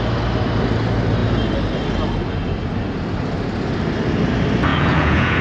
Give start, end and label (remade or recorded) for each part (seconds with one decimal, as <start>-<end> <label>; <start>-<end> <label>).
0.0-4.7 recorded; 4.7-5.4 remade

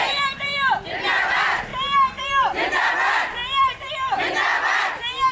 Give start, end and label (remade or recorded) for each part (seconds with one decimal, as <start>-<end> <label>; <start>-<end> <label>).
0.0-5.3 recorded

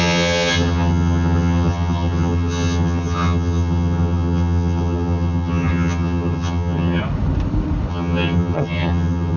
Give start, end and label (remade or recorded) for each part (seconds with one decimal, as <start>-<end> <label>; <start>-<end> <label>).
0.0-7.0 remade; 7.0-7.9 recorded; 7.9-9.4 remade

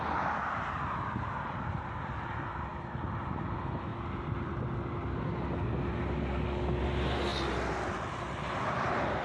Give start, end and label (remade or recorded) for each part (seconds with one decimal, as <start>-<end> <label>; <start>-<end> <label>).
0.0-9.2 recorded

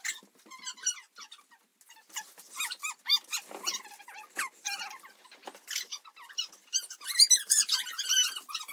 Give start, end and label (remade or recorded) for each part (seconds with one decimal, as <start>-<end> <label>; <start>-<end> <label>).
0.0-8.7 recorded